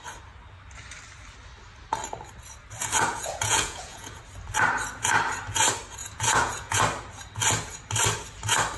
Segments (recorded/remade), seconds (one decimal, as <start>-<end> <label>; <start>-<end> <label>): 0.0-2.8 recorded; 2.8-4.2 remade; 4.2-6.0 recorded; 6.0-6.8 remade; 6.8-8.8 recorded